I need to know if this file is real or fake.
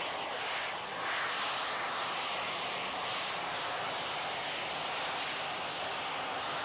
real